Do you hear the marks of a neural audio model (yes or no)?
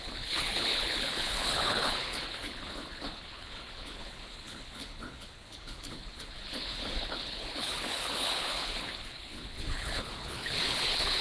yes